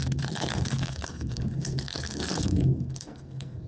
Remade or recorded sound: remade